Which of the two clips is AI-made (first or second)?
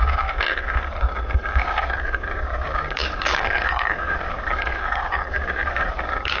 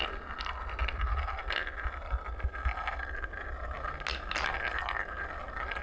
first